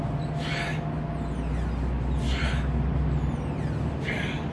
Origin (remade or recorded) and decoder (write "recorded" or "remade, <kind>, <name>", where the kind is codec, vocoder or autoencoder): recorded